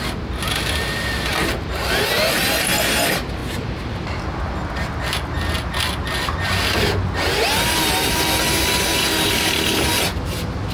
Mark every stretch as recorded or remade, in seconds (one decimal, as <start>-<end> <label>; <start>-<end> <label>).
0.0-10.7 recorded